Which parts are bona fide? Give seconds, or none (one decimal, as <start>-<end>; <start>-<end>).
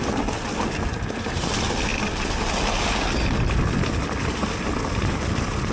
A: 0.0-0.9; 1.5-5.7